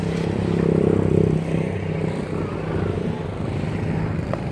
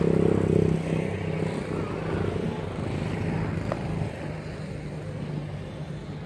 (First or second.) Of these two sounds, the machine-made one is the first